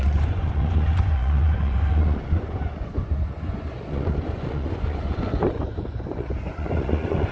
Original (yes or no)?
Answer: no